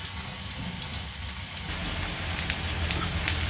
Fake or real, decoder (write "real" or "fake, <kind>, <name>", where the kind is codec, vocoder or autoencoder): real